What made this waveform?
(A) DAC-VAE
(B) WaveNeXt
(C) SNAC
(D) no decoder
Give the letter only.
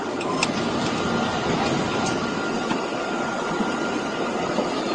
D